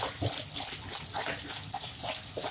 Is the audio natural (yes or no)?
yes